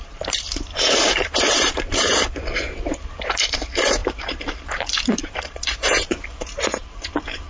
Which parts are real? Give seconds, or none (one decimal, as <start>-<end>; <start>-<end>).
none